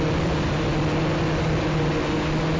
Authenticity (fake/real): real